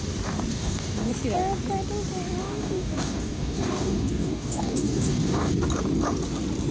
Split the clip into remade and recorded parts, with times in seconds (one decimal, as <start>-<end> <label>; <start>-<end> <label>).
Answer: 0.0-0.5 recorded; 0.5-1.1 remade; 1.1-2.4 recorded; 2.4-5.5 remade; 5.5-6.7 recorded